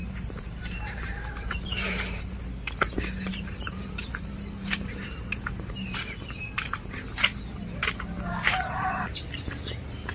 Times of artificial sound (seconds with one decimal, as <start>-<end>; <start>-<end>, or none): 0.0-2.4; 3.3-6.4